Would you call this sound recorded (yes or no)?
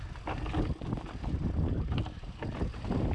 yes